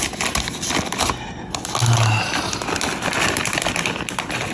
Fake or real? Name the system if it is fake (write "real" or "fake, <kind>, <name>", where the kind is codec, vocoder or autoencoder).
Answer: real